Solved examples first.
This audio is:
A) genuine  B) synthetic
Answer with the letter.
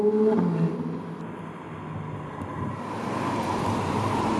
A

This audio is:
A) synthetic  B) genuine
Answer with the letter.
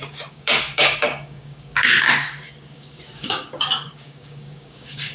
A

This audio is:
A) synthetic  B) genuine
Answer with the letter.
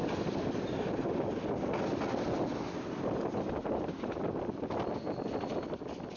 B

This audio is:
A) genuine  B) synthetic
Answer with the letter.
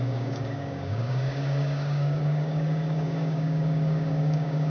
B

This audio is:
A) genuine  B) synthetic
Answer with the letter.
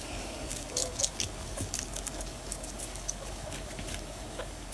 B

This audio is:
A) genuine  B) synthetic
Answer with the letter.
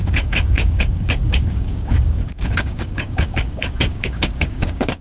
B